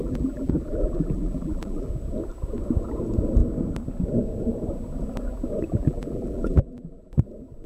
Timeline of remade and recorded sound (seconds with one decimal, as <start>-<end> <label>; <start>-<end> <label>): 0.0-1.9 remade; 1.9-5.8 recorded; 5.8-7.1 remade; 7.1-7.7 recorded